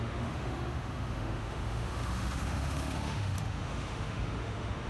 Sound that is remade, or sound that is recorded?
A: remade